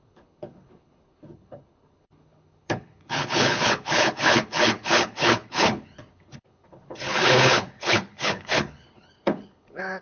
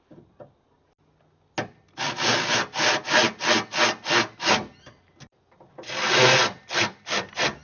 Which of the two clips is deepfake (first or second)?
first